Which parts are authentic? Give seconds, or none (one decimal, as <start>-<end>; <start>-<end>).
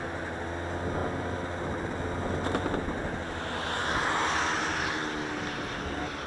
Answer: 0.0-6.3